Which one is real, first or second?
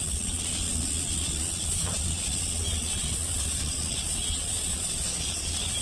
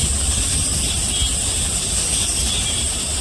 second